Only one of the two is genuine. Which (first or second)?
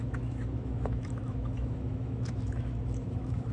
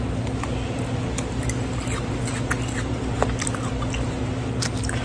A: second